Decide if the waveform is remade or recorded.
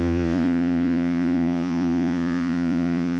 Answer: remade